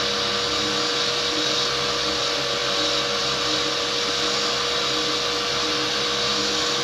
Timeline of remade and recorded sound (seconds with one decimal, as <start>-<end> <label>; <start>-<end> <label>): 0.0-6.8 recorded